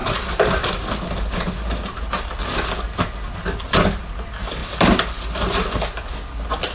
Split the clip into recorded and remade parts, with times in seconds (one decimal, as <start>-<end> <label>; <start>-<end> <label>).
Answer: 0.0-0.6 remade; 0.6-6.7 recorded